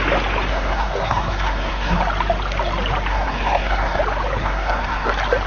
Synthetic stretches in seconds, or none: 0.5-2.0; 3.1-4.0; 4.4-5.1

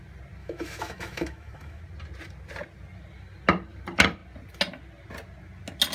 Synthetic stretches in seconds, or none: 0.4-1.8

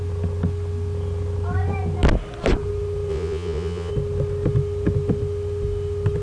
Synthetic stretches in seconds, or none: 3.1-3.9

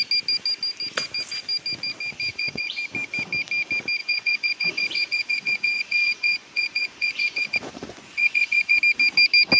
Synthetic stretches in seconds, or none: 2.3-2.8; 4.0-8.8